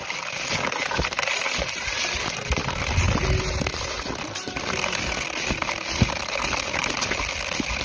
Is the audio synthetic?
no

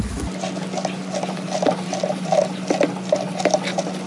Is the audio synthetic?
no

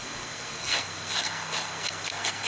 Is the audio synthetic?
yes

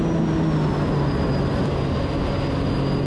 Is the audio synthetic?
no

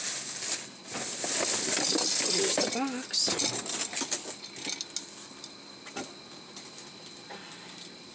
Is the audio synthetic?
no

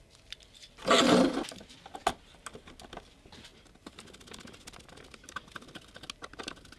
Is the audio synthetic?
no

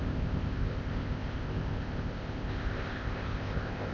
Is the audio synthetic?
yes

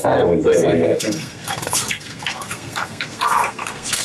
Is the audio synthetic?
yes